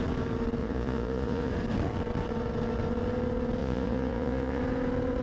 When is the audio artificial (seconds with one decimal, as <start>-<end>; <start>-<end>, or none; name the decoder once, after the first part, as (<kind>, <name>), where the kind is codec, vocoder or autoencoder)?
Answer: 0.6-1.5 (vocoder, Vocos); 3.6-4.6